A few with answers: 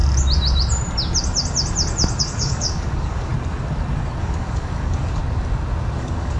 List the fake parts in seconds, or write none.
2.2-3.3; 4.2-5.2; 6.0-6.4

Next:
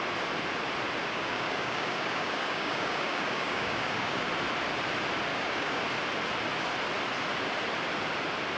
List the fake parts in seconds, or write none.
1.0-4.3; 5.3-5.8

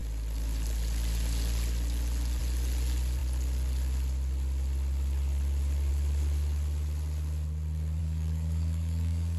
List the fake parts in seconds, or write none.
8.0-9.4

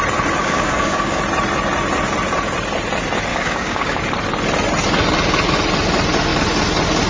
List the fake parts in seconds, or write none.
0.4-1.2; 3.3-4.0

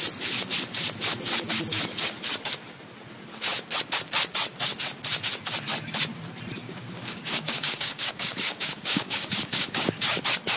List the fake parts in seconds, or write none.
6.6-10.2

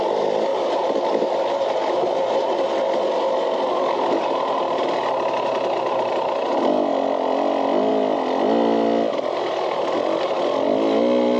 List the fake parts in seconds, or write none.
none

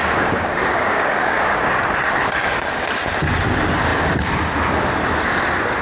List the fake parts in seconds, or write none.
0.0-1.8